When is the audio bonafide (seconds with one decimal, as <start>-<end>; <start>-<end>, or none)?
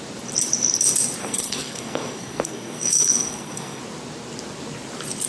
0.0-1.2; 3.8-5.3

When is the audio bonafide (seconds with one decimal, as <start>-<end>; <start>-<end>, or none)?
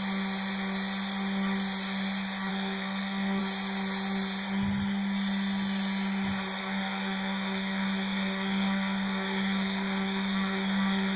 0.0-2.5; 3.4-6.6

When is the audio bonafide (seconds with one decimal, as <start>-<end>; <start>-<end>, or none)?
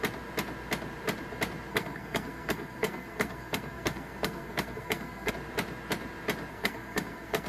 0.0-1.7; 5.3-6.5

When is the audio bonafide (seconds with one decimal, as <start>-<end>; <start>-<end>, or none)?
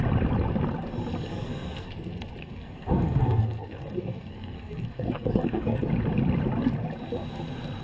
0.0-1.3; 1.9-2.4; 5.9-7.8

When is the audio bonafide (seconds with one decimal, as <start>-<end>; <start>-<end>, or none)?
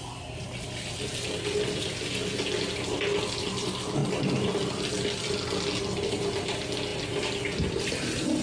0.0-8.4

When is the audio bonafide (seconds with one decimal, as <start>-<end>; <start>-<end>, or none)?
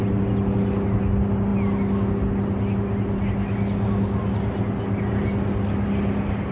0.0-6.5